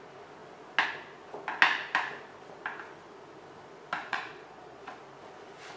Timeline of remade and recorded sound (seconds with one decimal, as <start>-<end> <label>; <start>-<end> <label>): 0.0-4.0 recorded; 4.0-5.0 remade; 5.0-5.8 recorded